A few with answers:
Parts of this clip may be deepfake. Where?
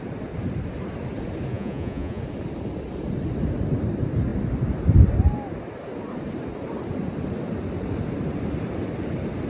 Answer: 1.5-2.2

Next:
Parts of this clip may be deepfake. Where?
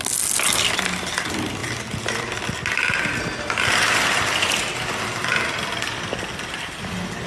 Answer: none